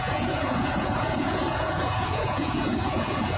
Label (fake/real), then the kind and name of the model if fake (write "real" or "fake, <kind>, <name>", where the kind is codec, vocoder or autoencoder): fake, vocoder, Vocos